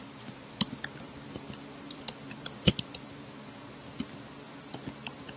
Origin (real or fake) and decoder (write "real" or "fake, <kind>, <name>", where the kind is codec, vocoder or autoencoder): fake, vocoder, BigVGAN v2